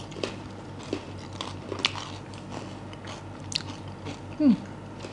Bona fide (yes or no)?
yes